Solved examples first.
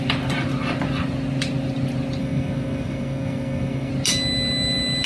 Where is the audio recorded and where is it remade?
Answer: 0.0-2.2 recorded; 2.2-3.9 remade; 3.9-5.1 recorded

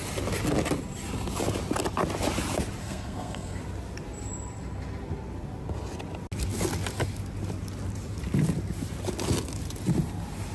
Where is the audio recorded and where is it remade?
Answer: 0.0-2.8 recorded; 2.8-3.6 remade; 3.6-10.5 recorded

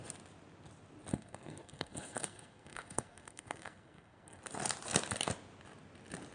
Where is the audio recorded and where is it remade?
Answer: 0.0-1.1 recorded; 1.1-4.4 remade; 4.4-6.3 recorded